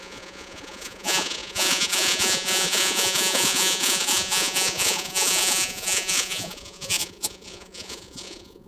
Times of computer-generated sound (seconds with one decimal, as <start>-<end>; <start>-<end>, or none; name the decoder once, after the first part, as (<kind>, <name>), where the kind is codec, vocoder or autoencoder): 0.0-8.7 (vocoder, Vocos)